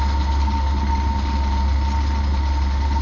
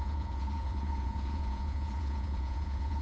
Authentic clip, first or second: first